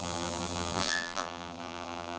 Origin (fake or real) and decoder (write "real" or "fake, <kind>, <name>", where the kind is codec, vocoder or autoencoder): fake, vocoder, BigVGAN v2